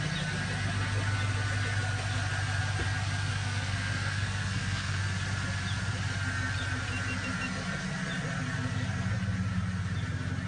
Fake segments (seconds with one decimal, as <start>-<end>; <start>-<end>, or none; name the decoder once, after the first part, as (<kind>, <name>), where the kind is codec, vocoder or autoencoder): 3.3-5.0 (codec, SNAC)